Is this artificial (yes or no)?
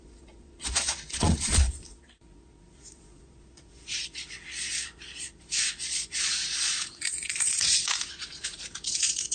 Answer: yes